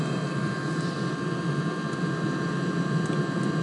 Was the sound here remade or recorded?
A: recorded